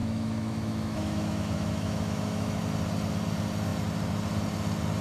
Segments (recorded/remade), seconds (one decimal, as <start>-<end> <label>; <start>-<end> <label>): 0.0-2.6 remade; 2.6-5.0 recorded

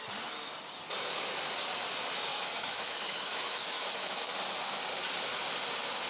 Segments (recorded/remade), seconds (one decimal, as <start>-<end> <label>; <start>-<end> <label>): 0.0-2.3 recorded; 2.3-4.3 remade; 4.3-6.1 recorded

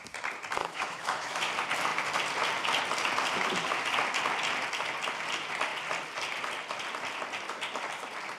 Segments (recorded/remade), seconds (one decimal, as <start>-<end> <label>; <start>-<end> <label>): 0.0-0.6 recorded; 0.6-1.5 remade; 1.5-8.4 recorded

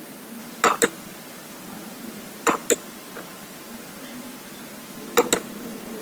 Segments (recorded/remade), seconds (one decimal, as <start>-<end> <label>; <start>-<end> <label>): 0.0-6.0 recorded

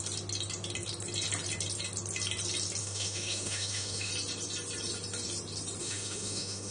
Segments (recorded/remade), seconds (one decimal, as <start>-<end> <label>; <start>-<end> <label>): 0.0-2.8 recorded; 2.8-4.1 remade; 4.1-5.8 recorded; 5.8-6.7 remade